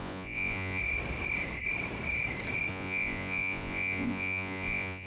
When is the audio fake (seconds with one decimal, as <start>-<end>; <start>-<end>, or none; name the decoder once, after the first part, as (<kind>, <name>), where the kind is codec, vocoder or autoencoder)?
0.0-0.8 (vocoder, Vocos); 2.7-5.1